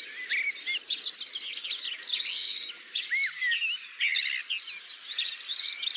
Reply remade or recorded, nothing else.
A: recorded